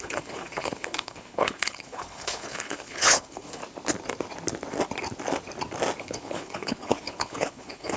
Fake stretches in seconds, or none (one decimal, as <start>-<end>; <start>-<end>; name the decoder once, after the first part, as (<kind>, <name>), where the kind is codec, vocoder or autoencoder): 0.0-3.6 (codec, HILCodec); 6.0-8.0

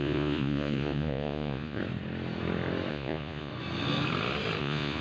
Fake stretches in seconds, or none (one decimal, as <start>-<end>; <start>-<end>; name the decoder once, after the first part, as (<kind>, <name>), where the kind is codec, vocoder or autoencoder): 0.0-1.8 (vocoder, Vocos); 2.9-3.5; 4.6-5.0

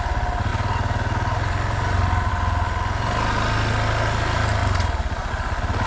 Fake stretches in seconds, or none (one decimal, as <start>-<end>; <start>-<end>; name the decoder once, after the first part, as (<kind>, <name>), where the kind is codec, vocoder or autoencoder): none

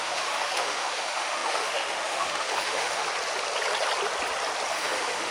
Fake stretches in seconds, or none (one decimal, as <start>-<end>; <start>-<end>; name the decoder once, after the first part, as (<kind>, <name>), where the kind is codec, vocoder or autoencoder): 0.0-3.0 (autoencoder, DAC-VAE); 4.7-5.3

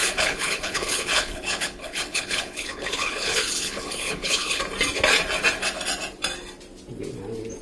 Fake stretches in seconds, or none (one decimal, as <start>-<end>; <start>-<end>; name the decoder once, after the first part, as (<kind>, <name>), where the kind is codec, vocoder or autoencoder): 0.0-4.6 (codec, HILCodec)